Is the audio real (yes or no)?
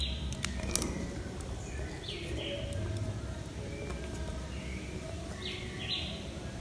yes